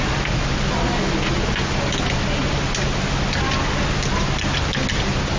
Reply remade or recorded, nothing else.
recorded